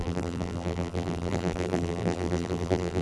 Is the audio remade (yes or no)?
yes